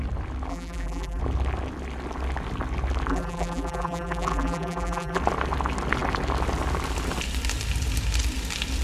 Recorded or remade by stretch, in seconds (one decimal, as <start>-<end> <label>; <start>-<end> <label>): 0.0-0.5 recorded; 0.5-1.2 remade; 1.2-3.1 recorded; 3.1-5.2 remade; 5.2-8.8 recorded